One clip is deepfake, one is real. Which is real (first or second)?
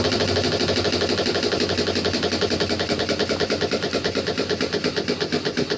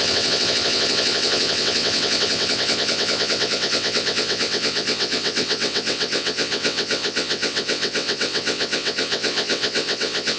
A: first